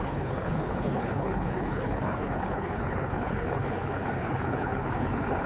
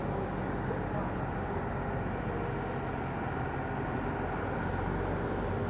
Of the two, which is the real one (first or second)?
second